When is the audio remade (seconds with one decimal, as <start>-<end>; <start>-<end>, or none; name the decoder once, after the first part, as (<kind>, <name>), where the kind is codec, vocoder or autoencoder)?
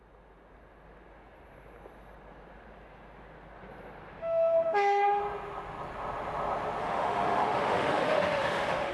4.2-5.2 (autoencoder, DAC-VAE); 6.8-8.9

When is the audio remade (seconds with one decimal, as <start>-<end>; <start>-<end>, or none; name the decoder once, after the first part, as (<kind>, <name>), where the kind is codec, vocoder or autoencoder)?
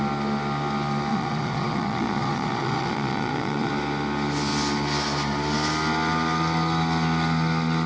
1.1-3.7 (vocoder, Vocos)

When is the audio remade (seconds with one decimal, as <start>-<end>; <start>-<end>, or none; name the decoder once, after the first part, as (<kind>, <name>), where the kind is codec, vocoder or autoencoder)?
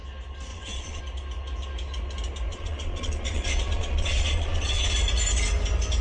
0.5-1.0 (vocoder, Vocos); 2.5-4.9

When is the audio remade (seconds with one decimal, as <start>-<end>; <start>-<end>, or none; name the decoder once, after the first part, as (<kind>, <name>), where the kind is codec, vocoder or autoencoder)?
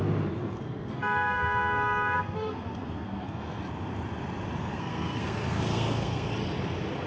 0.4-3.6 (codec, SNAC); 4.6-6.3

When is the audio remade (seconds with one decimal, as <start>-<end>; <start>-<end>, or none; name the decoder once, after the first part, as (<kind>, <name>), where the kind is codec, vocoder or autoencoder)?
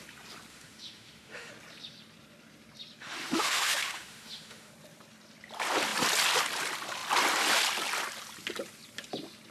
0.5-1.5 (autoencoder, DAC-VAE); 3.0-4.7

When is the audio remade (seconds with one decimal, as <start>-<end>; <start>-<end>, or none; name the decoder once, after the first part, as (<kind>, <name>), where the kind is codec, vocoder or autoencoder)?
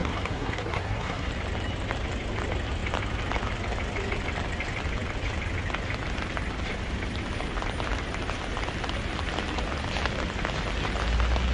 0.0-1.3 (codec, SNAC)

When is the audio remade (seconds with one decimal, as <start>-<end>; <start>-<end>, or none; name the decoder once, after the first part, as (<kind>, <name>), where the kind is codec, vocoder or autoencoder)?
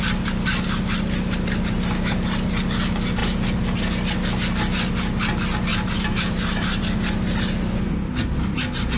5.7-6.8 (vocoder, BigVGAN v2)